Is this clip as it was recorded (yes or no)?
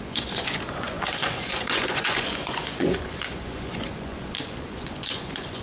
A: no